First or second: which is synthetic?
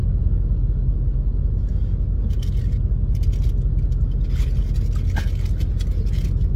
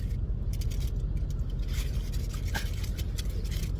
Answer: second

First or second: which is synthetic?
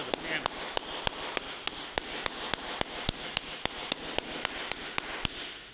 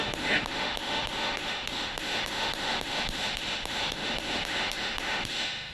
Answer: second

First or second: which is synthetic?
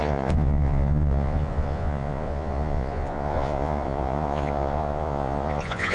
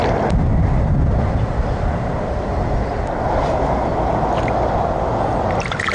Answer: first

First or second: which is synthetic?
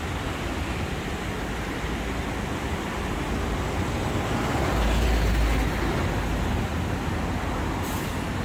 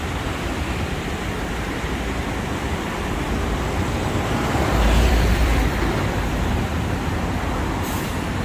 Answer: second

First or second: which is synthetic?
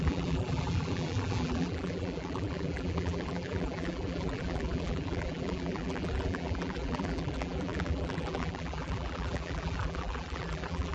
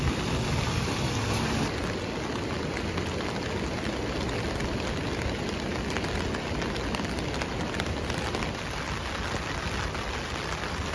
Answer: first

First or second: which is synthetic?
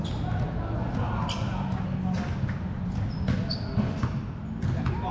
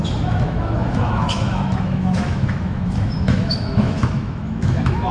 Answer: second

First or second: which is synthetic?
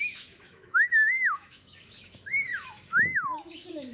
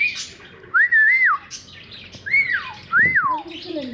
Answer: first